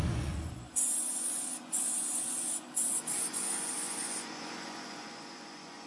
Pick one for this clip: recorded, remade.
remade